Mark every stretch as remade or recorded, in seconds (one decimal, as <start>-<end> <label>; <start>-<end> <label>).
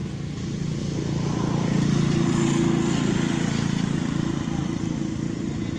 0.0-0.8 remade; 0.8-5.8 recorded